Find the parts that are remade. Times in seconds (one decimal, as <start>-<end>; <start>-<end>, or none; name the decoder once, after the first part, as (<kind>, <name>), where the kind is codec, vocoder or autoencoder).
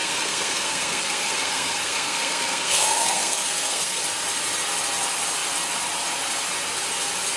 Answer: 0.0-4.0 (codec, SNAC)